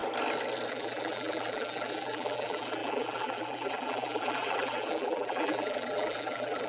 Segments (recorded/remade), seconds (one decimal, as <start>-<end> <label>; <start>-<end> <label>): 0.0-0.7 recorded; 0.7-6.7 remade